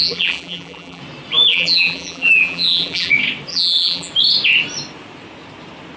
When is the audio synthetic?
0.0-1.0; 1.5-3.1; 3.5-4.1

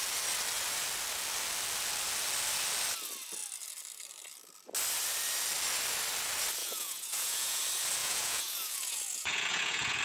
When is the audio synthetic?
6.6-7.6; 8.0-10.0

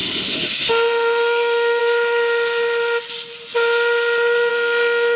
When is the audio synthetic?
0.0-1.8; 4.5-5.2